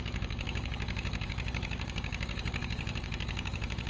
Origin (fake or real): fake